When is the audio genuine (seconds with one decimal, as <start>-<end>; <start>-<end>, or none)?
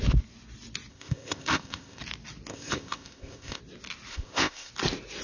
0.0-0.9; 2.0-2.5; 3.6-4.1; 4.7-5.2